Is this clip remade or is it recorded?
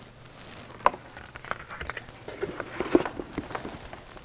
recorded